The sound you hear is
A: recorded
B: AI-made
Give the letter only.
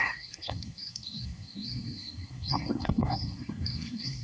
B